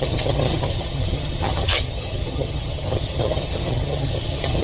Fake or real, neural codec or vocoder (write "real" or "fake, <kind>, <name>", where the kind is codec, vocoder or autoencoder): fake, vocoder, HiFi-GAN